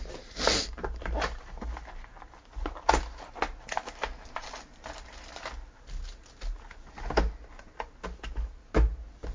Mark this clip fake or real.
real